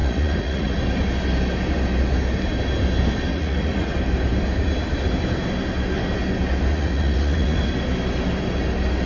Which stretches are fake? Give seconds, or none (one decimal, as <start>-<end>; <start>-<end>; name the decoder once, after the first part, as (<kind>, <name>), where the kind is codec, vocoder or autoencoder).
0.0-0.8 (vocoder, Vocos); 3.3-3.9; 6.7-7.6